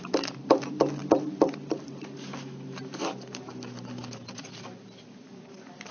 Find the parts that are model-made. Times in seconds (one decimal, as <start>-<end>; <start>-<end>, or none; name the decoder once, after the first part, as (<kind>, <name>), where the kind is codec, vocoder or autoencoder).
none